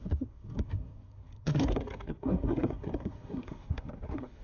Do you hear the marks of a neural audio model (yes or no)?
yes